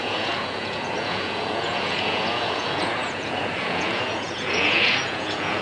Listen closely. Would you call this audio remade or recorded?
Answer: remade